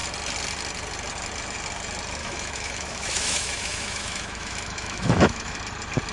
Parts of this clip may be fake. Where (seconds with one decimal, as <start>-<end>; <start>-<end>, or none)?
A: 2.2-5.6